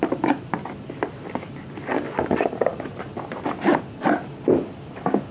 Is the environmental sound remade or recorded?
recorded